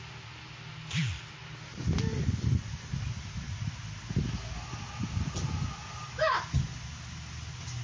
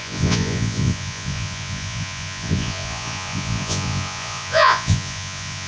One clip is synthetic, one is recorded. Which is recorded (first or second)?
first